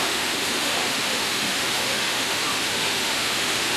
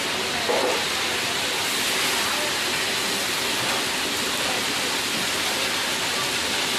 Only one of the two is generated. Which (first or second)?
first